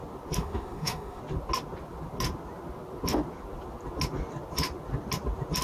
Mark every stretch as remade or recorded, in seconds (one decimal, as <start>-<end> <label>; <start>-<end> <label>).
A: 0.0-0.4 recorded; 0.4-1.2 remade; 1.2-5.6 recorded